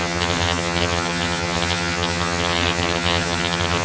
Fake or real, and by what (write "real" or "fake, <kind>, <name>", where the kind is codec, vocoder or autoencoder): fake, vocoder, HiFi-GAN